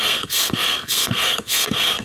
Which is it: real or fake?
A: fake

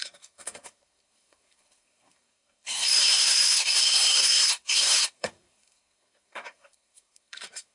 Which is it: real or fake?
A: fake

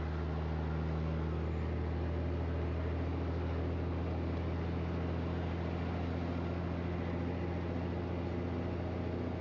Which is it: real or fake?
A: real